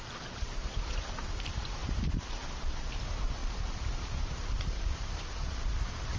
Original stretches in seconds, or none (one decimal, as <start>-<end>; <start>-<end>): 3.4-3.9